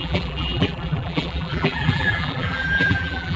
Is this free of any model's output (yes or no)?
no